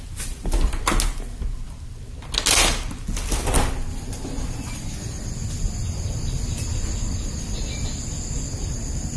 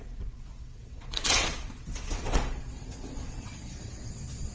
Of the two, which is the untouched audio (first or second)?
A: first